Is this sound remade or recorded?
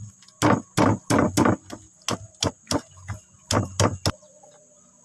recorded